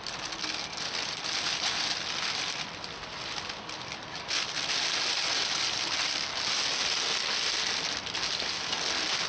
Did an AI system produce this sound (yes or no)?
no